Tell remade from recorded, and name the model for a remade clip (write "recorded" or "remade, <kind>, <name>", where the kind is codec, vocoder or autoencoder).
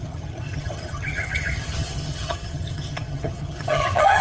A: remade, vocoder, HiFi-GAN